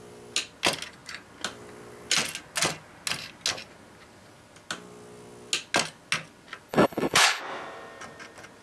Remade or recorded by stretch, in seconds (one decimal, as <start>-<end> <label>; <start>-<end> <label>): 0.0-6.7 recorded; 6.7-7.4 remade; 7.4-8.6 recorded